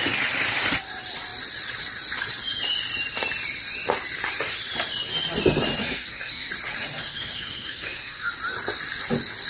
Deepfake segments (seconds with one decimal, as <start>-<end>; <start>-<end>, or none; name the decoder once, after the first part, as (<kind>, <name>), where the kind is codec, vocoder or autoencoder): 5.8-6.5 (codec, SNAC); 7.1-8.3